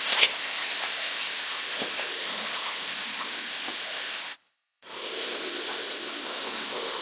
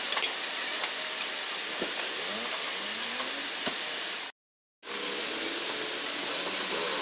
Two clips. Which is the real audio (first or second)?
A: second